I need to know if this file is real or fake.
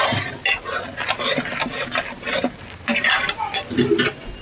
real